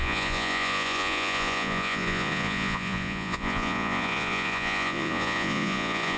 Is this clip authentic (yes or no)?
no